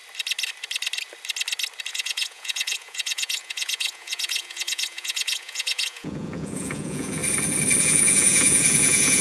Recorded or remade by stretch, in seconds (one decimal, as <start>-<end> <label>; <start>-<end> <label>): 0.0-1.9 recorded; 1.9-7.2 remade; 7.2-7.8 recorded; 7.8-9.2 remade